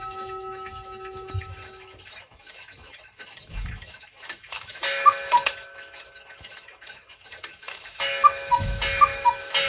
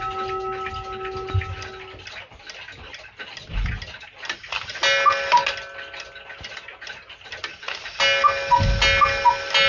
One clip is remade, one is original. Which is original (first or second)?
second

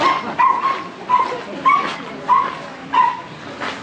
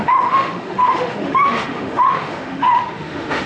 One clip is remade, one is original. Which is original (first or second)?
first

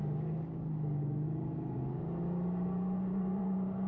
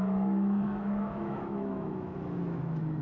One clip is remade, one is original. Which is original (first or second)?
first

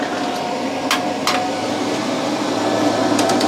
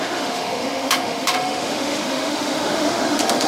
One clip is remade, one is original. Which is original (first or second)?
first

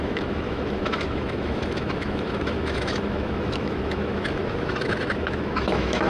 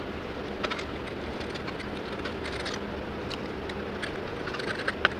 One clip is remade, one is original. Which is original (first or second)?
second